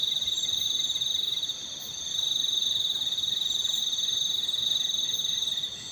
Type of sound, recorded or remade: recorded